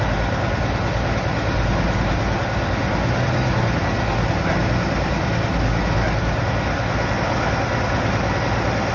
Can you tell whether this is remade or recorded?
recorded